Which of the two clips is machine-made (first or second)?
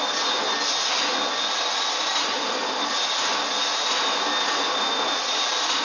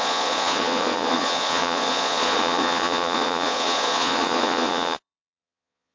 second